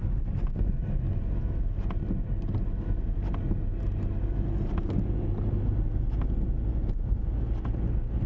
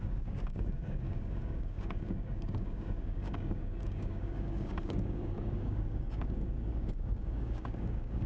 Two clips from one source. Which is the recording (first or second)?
first